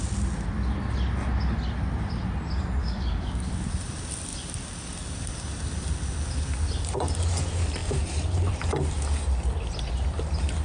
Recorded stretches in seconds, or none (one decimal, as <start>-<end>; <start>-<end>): 0.0-2.8; 3.5-10.6